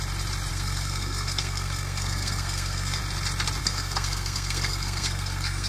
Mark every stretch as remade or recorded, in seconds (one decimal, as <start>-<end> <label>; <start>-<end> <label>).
0.0-0.5 recorded; 0.5-3.0 remade; 3.0-3.6 recorded; 3.6-5.7 remade